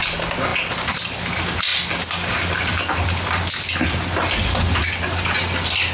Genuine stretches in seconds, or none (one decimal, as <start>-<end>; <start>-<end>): 0.0-5.9